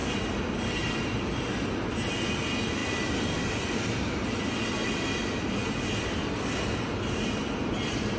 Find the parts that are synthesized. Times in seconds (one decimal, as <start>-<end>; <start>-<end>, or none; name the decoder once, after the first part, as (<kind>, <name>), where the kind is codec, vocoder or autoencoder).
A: 0.0-1.4 (vocoder, BigVGAN v2); 2.8-7.7